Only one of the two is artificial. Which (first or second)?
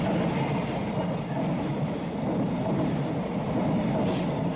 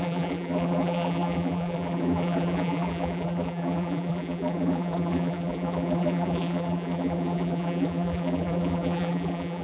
second